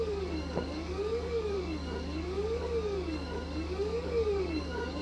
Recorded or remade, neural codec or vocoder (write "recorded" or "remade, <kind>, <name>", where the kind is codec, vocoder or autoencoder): remade, codec, DAC